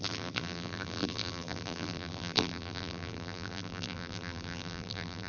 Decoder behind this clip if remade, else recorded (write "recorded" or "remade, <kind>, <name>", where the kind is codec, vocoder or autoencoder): remade, vocoder, BigVGAN v2